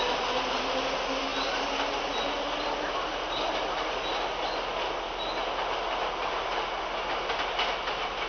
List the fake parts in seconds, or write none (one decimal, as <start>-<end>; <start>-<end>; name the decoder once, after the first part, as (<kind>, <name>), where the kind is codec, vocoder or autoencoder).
none